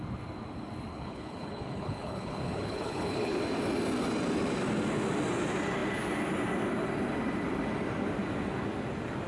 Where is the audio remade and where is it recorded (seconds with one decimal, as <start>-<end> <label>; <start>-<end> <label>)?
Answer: 0.0-0.9 recorded; 0.9-3.4 remade; 3.4-9.3 recorded